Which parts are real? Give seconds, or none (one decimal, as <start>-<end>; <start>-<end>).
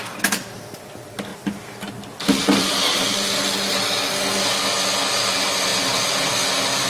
1.3-3.7